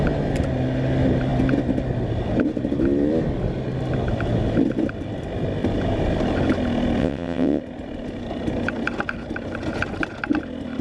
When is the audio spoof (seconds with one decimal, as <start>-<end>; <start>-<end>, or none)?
7.0-7.6